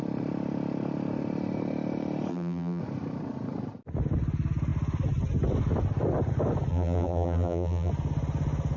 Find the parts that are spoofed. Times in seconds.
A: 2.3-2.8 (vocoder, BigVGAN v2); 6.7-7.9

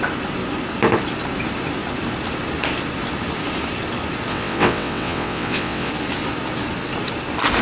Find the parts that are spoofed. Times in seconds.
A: 4.3-5.9 (vocoder, WaveNeXt)

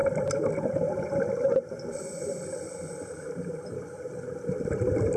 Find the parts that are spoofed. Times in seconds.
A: none